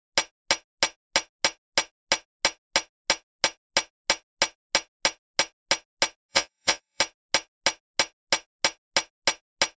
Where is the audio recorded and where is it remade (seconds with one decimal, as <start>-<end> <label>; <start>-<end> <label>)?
0.0-6.3 recorded; 6.3-7.0 remade; 7.0-9.8 recorded